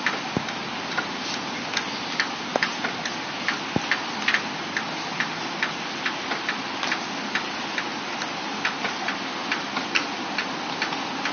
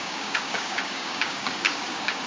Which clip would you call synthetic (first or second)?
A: second